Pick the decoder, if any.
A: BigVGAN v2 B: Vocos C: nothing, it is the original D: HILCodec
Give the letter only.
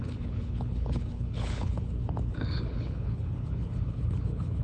D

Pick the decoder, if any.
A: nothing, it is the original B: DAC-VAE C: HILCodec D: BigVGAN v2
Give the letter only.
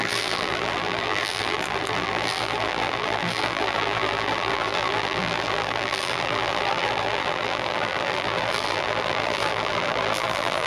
D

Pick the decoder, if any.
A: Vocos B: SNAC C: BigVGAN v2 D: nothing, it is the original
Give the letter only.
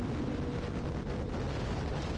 D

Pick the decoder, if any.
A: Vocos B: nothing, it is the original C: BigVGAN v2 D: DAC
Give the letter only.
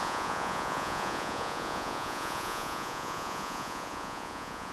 A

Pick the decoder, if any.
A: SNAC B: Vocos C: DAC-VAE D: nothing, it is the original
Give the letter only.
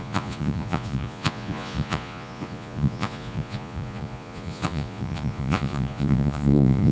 B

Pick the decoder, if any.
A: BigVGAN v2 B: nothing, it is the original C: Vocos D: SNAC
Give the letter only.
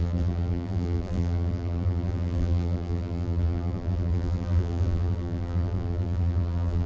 A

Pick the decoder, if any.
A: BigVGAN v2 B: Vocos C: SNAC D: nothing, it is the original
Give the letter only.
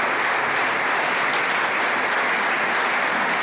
D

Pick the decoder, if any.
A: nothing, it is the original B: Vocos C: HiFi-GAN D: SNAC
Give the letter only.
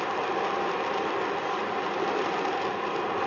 A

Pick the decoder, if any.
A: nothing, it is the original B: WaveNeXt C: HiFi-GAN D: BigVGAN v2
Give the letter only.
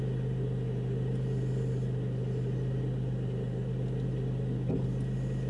A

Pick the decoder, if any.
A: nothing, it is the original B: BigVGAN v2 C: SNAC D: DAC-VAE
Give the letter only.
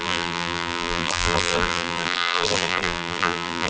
B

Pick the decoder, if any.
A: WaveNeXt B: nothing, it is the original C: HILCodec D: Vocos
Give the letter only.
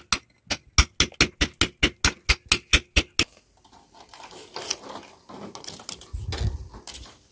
B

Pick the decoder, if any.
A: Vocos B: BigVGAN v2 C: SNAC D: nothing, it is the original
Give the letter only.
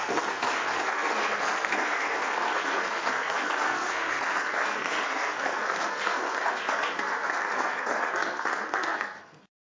C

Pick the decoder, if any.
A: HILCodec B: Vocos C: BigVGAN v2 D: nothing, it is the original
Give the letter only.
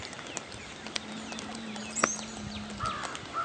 D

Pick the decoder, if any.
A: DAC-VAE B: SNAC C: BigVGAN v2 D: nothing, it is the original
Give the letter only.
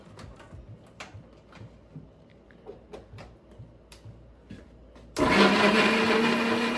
D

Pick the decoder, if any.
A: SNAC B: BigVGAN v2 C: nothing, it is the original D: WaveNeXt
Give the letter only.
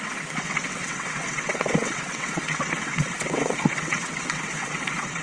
D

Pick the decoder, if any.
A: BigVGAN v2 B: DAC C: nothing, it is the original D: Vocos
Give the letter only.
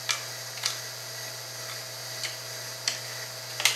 C